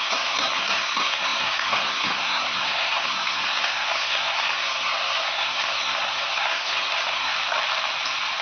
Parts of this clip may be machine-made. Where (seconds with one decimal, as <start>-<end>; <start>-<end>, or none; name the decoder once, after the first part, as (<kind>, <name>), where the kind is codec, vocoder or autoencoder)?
0.0-7.3 (codec, SNAC)